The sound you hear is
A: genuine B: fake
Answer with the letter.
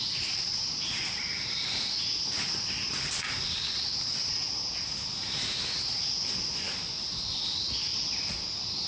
A